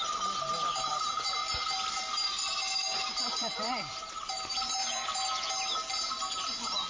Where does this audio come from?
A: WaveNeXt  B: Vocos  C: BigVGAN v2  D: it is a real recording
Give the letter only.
C